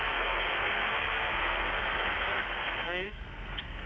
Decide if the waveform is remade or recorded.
remade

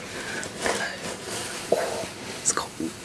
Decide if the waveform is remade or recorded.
recorded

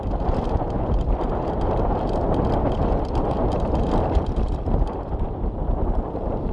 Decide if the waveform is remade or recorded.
recorded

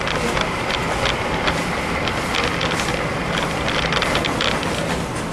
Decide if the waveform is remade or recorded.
recorded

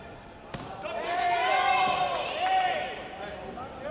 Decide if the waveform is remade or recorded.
recorded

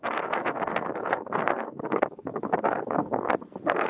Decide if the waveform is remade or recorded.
remade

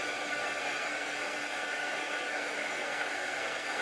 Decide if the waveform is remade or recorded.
remade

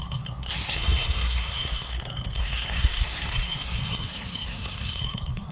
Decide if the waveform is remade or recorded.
remade